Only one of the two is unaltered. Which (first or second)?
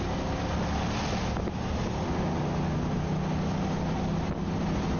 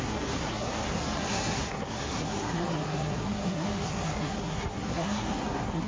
first